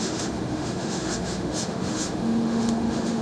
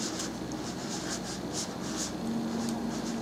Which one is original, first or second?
second